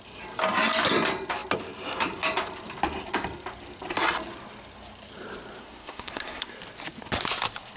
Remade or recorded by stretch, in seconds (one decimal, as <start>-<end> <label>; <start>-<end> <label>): 0.0-5.6 recorded; 5.6-6.5 remade; 6.5-7.8 recorded